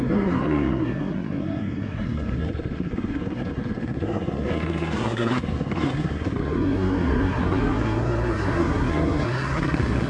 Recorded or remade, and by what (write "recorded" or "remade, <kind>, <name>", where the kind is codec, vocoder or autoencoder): remade, codec, SNAC